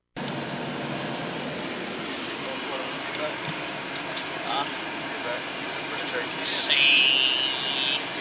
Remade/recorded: recorded